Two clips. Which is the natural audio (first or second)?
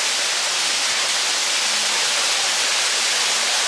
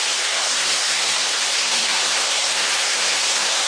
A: first